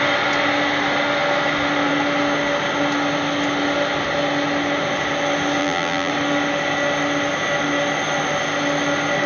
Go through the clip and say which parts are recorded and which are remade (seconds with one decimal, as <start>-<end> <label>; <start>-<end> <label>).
0.0-5.6 recorded; 5.6-6.1 remade; 6.1-9.3 recorded